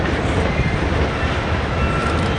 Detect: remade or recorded recorded